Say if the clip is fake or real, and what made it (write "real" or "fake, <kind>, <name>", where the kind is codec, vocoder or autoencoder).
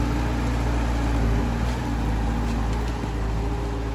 real